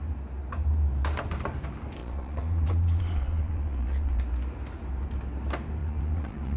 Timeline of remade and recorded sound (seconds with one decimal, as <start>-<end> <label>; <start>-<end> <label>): 0.0-2.0 recorded; 2.0-4.2 remade; 4.2-5.8 recorded; 5.8-6.6 remade